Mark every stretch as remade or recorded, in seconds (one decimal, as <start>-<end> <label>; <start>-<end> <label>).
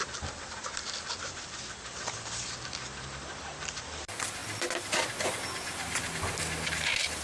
0.0-7.2 remade